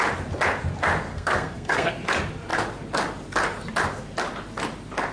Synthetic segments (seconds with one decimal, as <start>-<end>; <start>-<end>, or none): 1.1-1.9